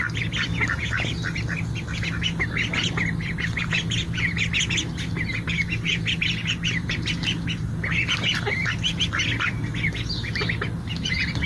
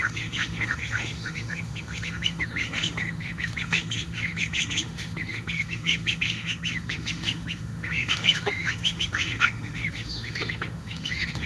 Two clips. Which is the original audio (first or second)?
first